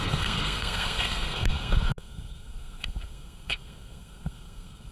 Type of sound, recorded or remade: remade